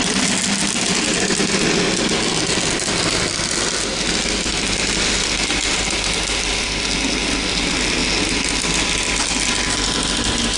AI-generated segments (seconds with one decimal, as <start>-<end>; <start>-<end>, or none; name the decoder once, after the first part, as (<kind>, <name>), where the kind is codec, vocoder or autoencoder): none